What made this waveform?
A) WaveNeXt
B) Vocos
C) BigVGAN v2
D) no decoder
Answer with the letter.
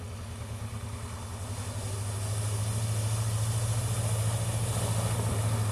D